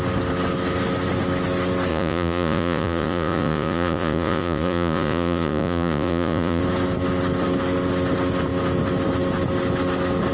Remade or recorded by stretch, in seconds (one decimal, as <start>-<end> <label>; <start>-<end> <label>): 0.0-1.9 recorded; 1.9-6.6 remade; 6.6-10.3 recorded